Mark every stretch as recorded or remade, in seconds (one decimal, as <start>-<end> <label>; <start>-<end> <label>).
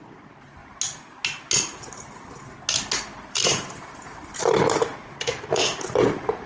0.0-0.6 remade; 0.6-3.0 recorded; 3.0-4.9 remade; 4.9-5.9 recorded; 5.9-6.5 remade